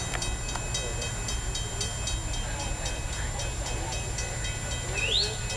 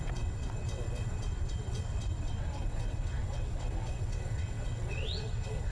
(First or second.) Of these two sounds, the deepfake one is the second